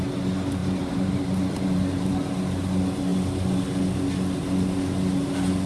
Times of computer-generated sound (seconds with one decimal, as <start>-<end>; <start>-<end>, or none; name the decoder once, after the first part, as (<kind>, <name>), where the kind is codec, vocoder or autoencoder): 0.6-2.1 (vocoder, BigVGAN v2)